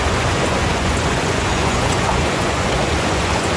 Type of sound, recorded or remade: remade